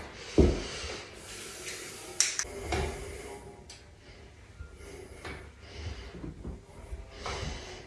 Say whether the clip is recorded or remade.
recorded